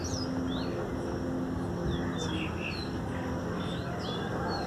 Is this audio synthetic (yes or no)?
no